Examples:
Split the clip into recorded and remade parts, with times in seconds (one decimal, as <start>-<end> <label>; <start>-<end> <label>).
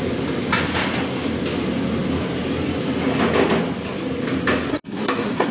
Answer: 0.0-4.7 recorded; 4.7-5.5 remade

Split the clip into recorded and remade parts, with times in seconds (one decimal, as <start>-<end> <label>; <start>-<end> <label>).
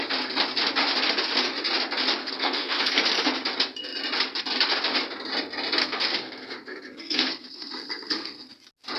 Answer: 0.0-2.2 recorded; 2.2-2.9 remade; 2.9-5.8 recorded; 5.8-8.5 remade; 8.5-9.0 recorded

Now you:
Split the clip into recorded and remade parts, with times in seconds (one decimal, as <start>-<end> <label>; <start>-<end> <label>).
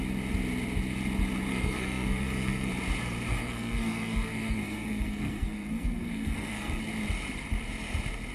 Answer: 0.0-1.5 recorded; 1.5-2.7 remade; 2.7-3.3 recorded; 3.3-6.8 remade; 6.8-8.3 recorded